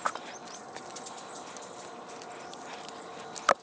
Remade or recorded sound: recorded